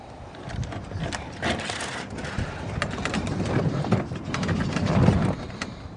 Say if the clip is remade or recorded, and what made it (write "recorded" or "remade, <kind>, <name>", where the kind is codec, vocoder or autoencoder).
recorded